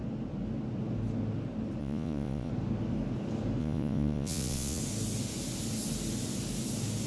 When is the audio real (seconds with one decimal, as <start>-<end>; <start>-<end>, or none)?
0.0-1.8; 2.5-3.6; 4.8-7.1

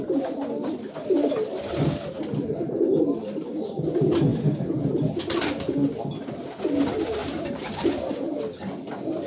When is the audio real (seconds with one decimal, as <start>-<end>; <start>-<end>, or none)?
0.0-7.2; 8.4-9.3

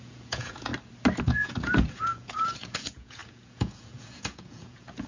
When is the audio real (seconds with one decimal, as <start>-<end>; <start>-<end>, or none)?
0.7-1.2

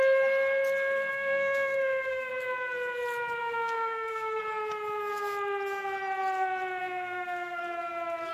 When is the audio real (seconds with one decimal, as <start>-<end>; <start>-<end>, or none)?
0.0-1.1; 2.3-3.4; 4.4-6.8; 7.6-8.3

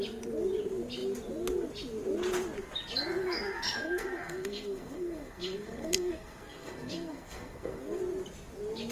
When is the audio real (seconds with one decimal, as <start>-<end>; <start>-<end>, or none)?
0.0-3.2; 8.0-8.9